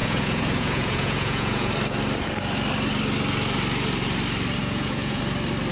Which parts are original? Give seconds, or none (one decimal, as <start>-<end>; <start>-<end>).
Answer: 1.7-4.6; 5.2-5.7